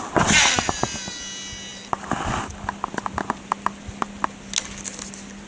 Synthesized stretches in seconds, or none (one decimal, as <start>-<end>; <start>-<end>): none